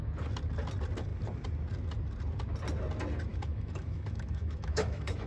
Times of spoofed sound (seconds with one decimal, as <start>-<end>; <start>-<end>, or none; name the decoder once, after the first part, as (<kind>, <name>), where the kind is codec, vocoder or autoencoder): 3.3-5.3 (autoencoder, DAC-VAE)